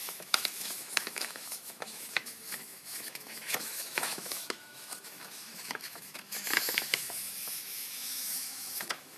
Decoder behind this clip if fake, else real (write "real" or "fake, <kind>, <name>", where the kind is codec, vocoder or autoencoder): fake, autoencoder, DAC-VAE